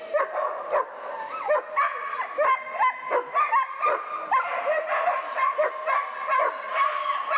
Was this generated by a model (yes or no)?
no